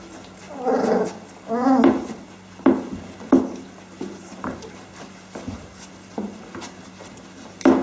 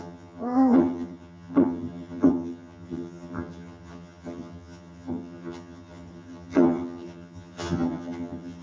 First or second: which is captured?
first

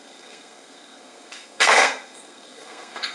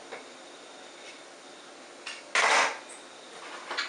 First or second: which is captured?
second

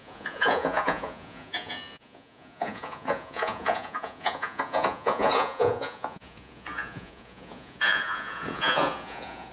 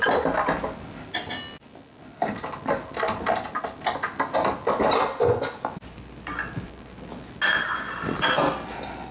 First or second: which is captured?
second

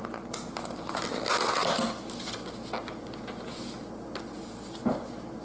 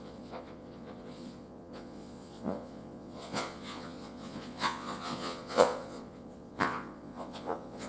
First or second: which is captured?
first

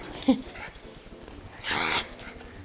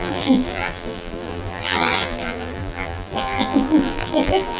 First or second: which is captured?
first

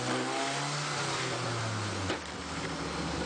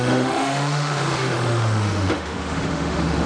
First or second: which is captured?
first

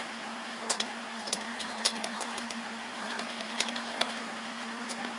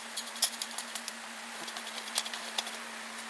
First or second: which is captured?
second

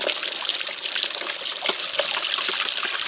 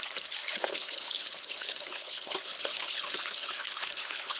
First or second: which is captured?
first